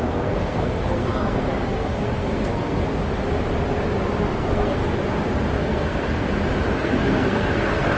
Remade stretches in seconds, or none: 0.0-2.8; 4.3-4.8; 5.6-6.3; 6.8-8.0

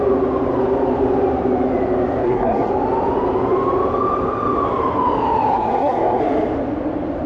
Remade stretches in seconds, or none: 2.2-2.7; 5.5-6.2

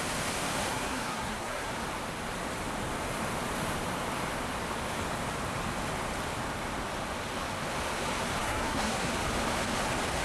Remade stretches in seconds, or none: 0.7-1.7; 8.4-9.1

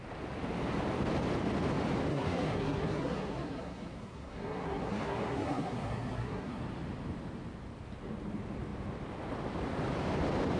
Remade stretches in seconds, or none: 2.1-6.6

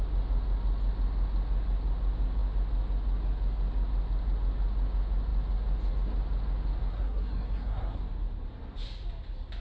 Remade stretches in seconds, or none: 6.9-8.0

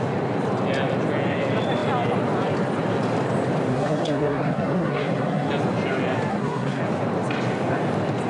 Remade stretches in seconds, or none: 3.7-5.5; 6.3-6.8

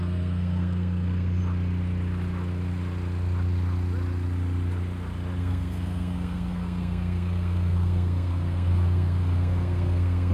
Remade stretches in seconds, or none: 0.0-1.4; 5.4-10.3